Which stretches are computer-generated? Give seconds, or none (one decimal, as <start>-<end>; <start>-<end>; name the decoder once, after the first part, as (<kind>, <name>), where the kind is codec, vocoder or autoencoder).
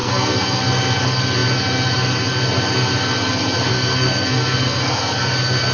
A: 0.0-0.6 (codec, SNAC); 3.7-5.0